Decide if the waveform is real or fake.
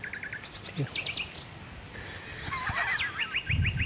real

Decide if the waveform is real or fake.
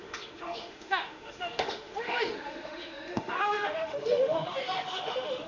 fake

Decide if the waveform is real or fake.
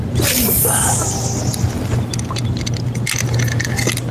real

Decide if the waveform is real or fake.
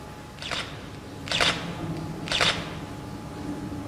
real